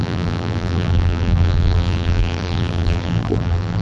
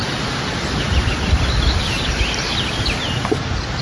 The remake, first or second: first